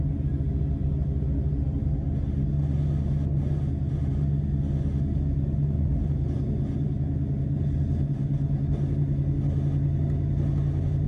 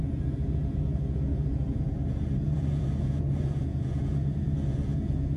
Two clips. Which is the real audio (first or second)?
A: first